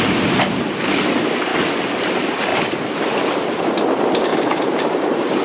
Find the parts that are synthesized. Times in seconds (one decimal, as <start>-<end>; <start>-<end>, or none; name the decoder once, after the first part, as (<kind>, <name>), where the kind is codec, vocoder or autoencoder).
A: 4.3-5.4 (vocoder, BigVGAN v2)